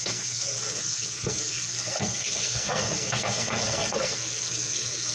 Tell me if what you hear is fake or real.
fake